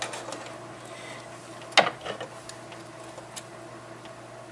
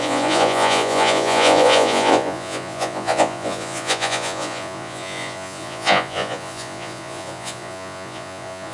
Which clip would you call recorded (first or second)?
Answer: first